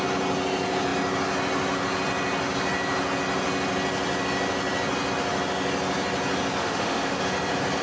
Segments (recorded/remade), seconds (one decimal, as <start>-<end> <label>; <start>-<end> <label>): 0.0-6.6 recorded; 6.6-7.2 remade; 7.2-7.8 recorded